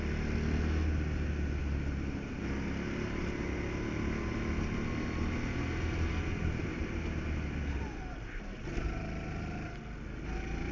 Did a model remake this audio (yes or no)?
no